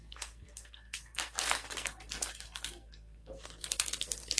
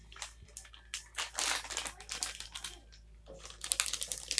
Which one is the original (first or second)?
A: second